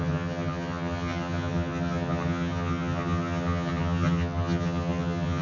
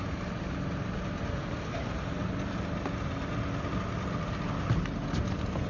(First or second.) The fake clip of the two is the first